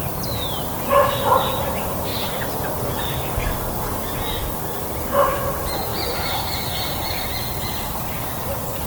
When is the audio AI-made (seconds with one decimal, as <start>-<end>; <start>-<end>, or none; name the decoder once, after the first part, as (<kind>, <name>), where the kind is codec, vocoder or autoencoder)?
none